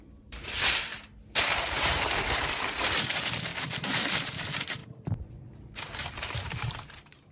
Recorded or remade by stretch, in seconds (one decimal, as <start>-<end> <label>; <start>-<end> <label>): 0.0-0.9 remade; 0.9-1.4 recorded; 1.4-3.5 remade; 3.5-4.2 recorded; 4.2-7.3 remade